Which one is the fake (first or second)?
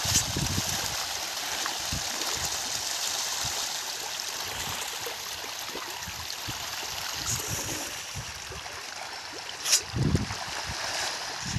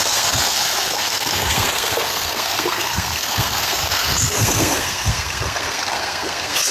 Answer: second